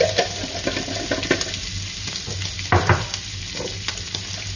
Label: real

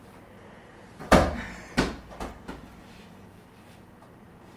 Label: fake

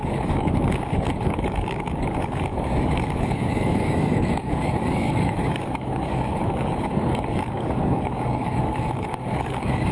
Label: fake